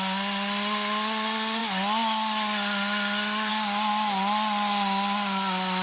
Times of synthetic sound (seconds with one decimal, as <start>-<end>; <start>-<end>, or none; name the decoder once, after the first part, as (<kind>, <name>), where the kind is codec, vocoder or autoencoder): none